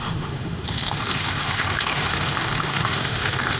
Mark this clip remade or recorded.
remade